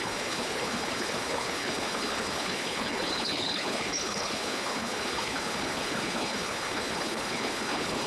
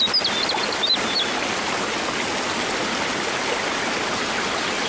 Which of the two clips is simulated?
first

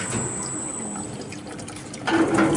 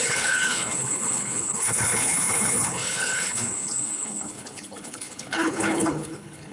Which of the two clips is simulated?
second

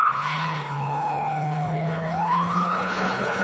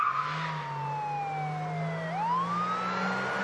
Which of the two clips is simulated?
first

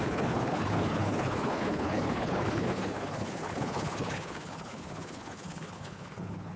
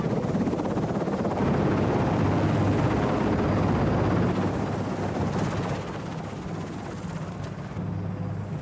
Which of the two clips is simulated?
first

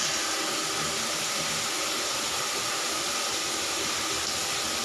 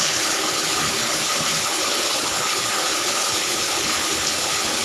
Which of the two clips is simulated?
second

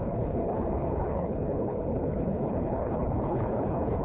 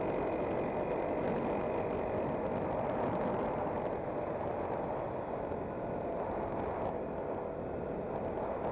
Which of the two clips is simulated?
first